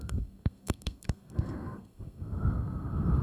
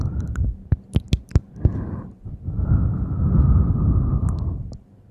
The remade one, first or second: first